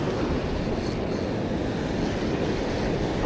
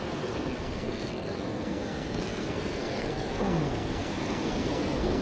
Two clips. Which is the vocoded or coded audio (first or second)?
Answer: second